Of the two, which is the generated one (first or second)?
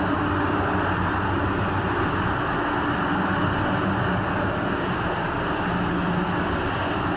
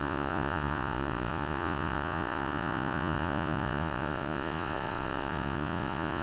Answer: second